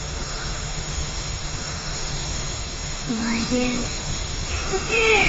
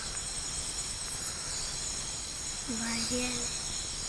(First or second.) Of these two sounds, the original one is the second